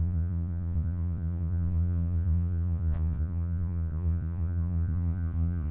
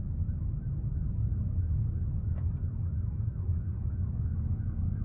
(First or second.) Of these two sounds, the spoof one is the first